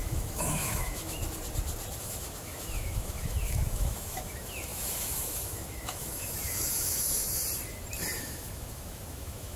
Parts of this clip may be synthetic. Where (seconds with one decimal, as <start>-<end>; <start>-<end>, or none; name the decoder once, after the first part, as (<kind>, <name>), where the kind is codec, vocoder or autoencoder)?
0.0-1.2 (autoencoder, DAC-VAE); 2.0-7.4; 8.2-9.6